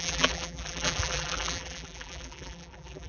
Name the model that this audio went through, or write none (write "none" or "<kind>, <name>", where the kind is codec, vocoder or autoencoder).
vocoder, BigVGAN v2